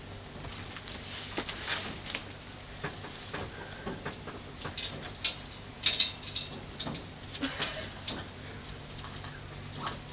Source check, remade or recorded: recorded